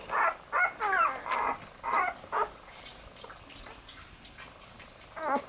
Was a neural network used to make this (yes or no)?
no